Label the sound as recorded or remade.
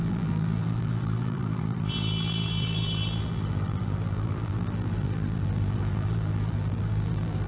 remade